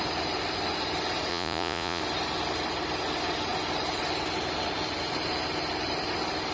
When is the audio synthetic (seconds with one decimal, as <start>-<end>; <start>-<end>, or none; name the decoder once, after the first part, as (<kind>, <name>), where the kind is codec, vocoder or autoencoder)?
1.3-2.0 (vocoder, Vocos)